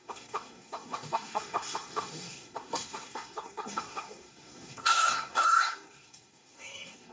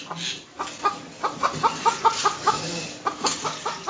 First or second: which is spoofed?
first